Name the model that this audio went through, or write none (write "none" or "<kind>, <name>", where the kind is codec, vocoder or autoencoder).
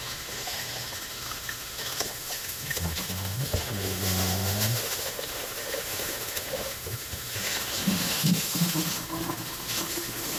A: autoencoder, DAC-VAE